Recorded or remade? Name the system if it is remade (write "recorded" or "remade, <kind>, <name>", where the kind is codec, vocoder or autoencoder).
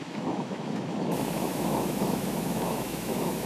remade, autoencoder, DAC-VAE